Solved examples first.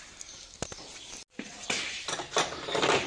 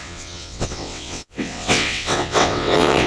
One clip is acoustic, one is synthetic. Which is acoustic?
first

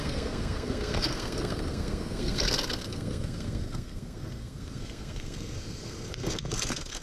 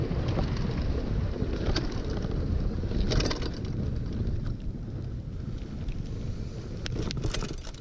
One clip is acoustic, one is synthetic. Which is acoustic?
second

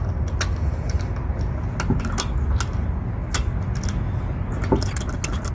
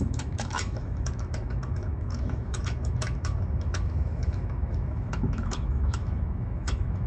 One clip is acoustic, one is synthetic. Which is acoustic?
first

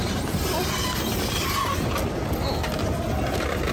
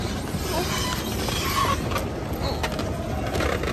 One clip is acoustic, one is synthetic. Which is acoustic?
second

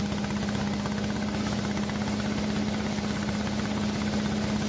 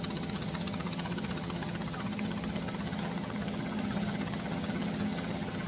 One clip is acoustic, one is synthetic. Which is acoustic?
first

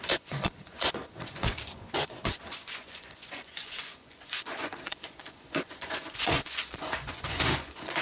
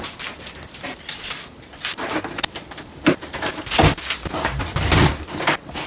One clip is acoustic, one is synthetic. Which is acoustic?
second